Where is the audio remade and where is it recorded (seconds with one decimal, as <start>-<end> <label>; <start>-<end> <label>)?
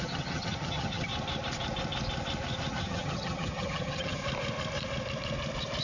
0.0-1.1 remade; 1.1-2.7 recorded; 2.7-4.2 remade; 4.2-5.8 recorded